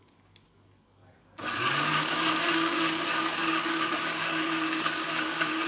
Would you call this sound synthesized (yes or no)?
yes